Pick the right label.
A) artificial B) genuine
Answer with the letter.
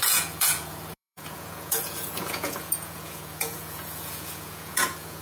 A